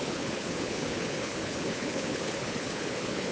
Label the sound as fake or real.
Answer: fake